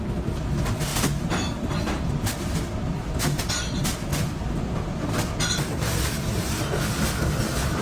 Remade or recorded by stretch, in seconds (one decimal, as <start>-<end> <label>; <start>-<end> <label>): 0.0-7.8 recorded